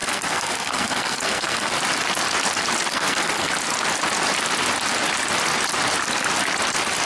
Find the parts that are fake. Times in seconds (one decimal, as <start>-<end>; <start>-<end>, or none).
0.0-1.7; 2.9-3.5